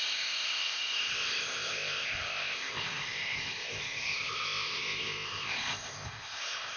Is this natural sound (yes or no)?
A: no